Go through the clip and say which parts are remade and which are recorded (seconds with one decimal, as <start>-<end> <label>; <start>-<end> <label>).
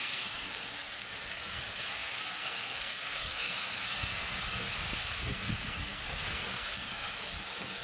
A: 0.0-7.8 remade